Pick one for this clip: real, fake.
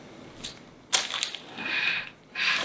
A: real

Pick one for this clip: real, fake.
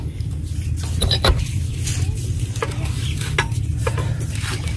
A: real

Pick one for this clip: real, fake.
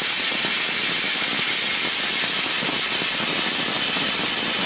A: real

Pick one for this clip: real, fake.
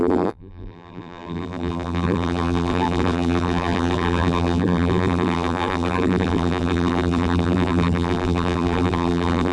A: fake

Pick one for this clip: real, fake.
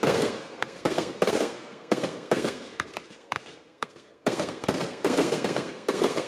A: fake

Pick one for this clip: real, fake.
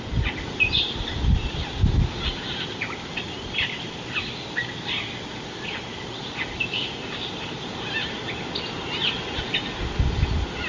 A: fake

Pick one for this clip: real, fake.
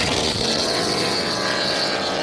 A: fake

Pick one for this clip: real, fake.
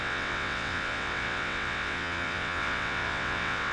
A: fake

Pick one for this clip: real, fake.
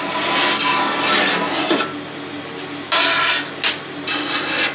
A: real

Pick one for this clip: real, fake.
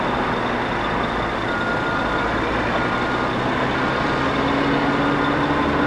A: real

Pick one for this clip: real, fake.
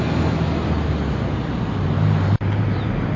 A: real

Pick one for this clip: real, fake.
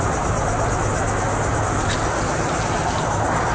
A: real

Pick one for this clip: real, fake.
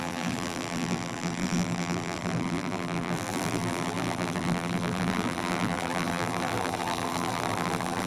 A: fake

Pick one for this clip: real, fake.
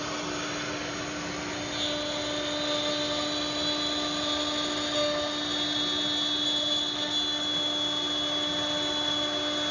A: real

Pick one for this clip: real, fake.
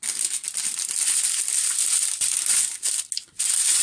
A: real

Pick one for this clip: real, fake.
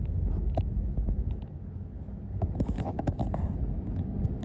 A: fake